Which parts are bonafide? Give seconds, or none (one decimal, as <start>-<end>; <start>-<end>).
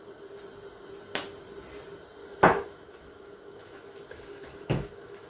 0.0-2.2